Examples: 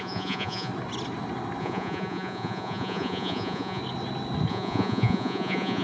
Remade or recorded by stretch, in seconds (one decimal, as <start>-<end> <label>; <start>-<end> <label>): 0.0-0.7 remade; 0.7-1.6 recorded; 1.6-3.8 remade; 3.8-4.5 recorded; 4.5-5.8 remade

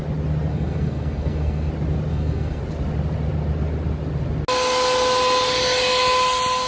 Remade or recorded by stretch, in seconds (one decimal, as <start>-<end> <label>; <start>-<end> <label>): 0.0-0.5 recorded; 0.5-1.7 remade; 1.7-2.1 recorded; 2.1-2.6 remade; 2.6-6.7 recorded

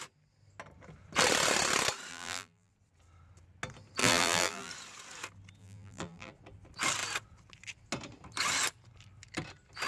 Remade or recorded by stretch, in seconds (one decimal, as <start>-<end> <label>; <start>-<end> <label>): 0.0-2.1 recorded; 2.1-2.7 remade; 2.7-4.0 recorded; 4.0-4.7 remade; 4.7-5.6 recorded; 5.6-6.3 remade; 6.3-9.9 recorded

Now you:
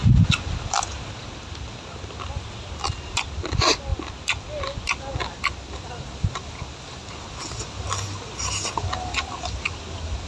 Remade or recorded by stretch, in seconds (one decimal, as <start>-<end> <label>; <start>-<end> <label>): 0.0-10.3 recorded

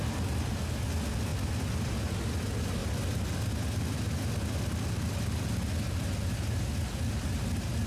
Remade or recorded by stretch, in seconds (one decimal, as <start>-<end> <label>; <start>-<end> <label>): 0.0-7.9 recorded

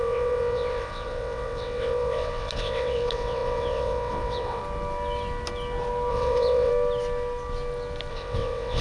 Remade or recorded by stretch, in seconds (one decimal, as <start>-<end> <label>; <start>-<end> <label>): 0.0-4.6 remade; 4.6-6.1 recorded; 6.1-6.7 remade; 6.7-8.1 recorded; 8.1-8.8 remade

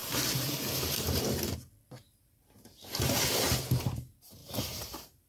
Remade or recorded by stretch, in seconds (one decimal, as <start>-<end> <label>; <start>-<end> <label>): 0.0-1.2 remade; 1.2-2.0 recorded; 2.0-3.2 remade; 3.2-4.4 recorded; 4.4-5.3 remade

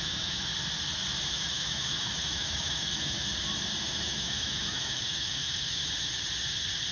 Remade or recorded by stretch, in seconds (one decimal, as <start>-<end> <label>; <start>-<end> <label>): 0.0-0.5 remade; 0.5-1.3 recorded; 1.3-3.3 remade; 3.3-3.8 recorded; 3.8-5.8 remade; 5.8-6.9 recorded